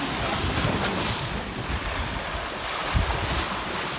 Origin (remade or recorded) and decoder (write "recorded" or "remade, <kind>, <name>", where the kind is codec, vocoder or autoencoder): recorded